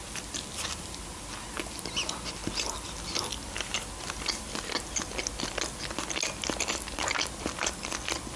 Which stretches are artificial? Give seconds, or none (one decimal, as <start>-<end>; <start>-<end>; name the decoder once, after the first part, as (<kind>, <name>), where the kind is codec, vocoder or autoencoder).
none